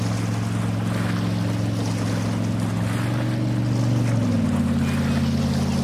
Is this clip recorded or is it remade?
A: recorded